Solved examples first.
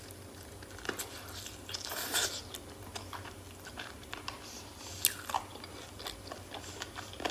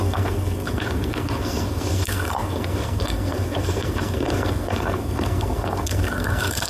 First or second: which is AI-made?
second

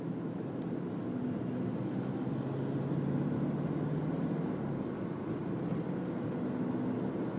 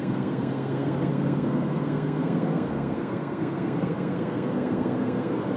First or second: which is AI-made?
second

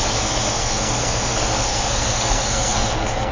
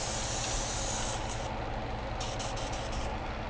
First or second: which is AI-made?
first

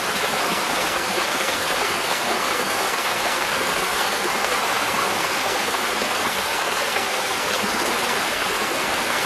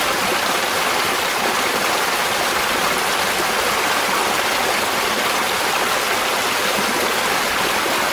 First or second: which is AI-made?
first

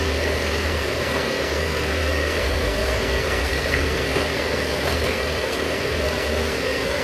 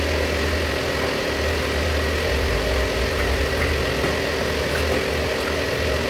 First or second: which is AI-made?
first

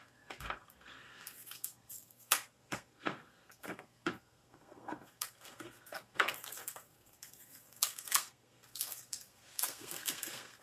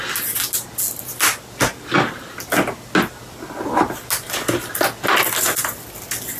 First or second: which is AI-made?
first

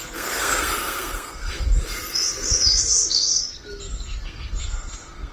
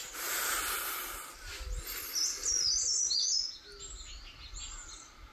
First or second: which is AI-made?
first